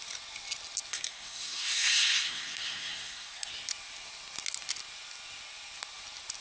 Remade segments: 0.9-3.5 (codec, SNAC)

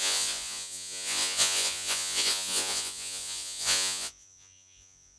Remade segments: 0.0-5.2 (vocoder, Vocos)

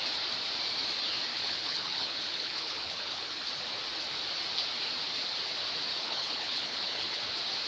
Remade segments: 1.3-3.5 (codec, HILCodec); 5.9-7.2

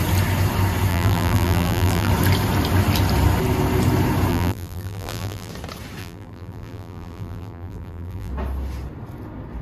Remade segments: 0.9-2.1 (vocoder, BigVGAN v2); 4.3-5.5; 6.0-8.3

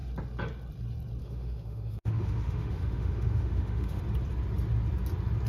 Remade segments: 1.2-4.0 (autoencoder, DAC-VAE)

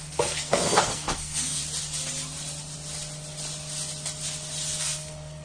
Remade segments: 0.0-1.6 (codec, SNAC); 4.8-5.4

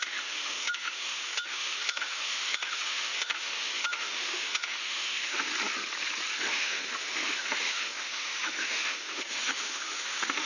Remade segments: 0.0-5.5 (autoencoder, DAC-VAE); 6.4-10.5

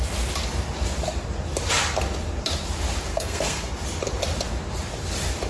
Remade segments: 3.1-3.7 (codec, SNAC)